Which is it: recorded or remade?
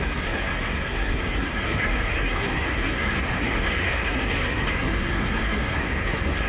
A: remade